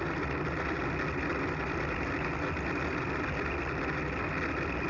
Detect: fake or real real